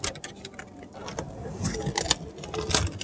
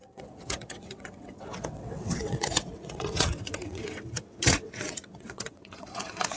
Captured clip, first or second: first